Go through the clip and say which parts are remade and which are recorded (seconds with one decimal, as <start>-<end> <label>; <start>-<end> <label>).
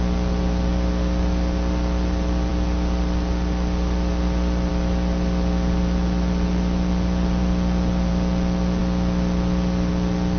0.0-10.4 recorded